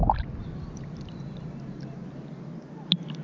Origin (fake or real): real